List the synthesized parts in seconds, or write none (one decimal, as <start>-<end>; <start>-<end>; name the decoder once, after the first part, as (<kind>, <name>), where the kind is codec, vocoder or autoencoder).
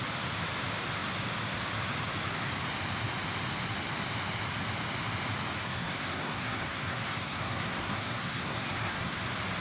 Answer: 5.6-9.2 (codec, SNAC)